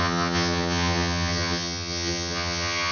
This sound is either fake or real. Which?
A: fake